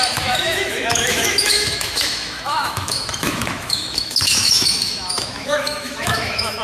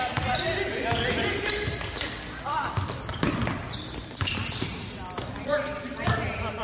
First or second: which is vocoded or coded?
first